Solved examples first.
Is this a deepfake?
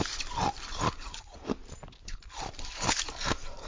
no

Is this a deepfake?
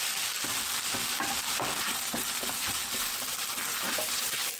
no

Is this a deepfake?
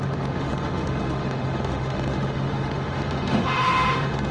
yes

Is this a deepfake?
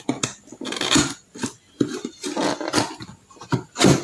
no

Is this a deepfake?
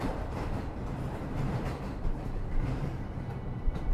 yes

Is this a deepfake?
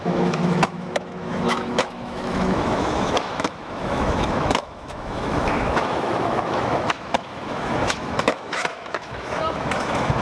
yes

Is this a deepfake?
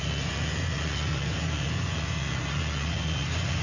yes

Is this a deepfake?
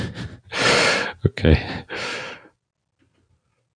no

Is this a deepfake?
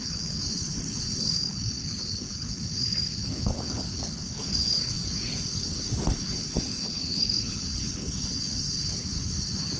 yes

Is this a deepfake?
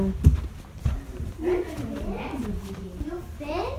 no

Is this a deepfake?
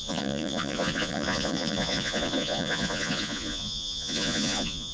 yes